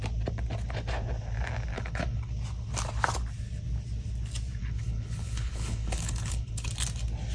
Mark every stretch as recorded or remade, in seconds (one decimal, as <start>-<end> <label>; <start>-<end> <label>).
0.0-1.7 recorded; 1.7-2.3 remade; 2.3-4.6 recorded; 4.6-6.7 remade; 6.7-7.3 recorded